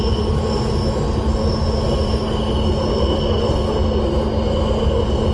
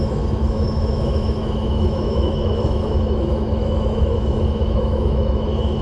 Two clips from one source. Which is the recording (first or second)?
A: first